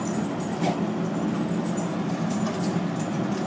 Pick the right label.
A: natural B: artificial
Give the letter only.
A